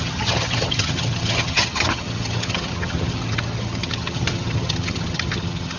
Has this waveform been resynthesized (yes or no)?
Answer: yes